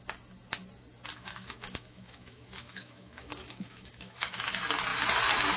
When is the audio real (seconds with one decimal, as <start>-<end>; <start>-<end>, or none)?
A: 0.0-1.1; 4.5-5.6